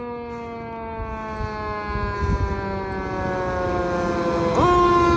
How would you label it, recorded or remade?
recorded